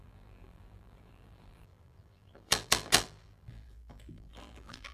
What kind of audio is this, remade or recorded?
remade